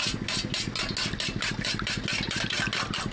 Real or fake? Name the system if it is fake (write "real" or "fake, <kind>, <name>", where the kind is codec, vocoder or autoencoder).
real